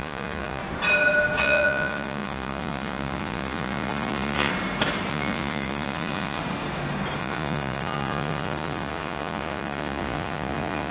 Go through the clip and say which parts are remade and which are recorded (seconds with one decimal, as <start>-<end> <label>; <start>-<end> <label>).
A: 0.0-0.6 remade; 0.6-1.4 recorded; 1.4-4.5 remade; 4.5-5.1 recorded; 5.1-6.4 remade; 6.4-7.2 recorded; 7.2-10.9 remade